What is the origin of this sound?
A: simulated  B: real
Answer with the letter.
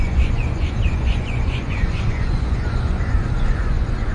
A